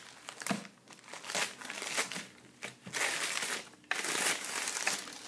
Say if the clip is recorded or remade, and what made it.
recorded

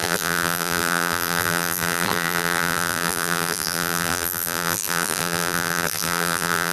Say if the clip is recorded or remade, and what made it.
remade, vocoder, BigVGAN v2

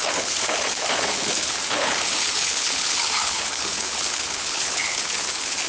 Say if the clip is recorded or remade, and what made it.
remade, codec, HILCodec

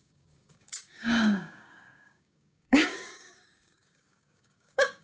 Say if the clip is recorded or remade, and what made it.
remade, codec, DAC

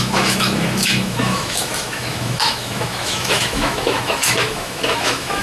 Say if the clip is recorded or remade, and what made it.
remade, autoencoder, DAC-VAE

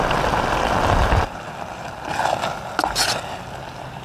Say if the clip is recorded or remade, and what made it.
recorded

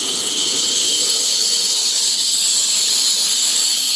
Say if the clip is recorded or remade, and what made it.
remade, codec, HILCodec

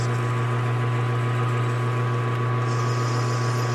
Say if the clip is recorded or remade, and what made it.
recorded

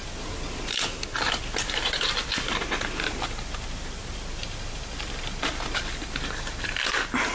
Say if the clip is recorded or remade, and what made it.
recorded